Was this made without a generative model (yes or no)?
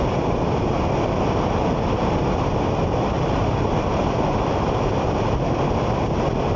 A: yes